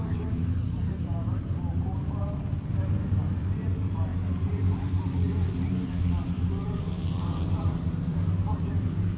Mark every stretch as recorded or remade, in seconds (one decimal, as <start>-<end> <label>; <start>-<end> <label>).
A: 0.0-9.2 remade